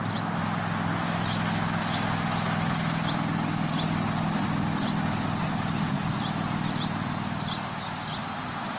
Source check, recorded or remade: recorded